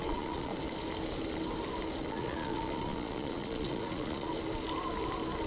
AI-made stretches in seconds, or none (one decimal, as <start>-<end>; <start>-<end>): 0.0-0.5; 2.1-4.3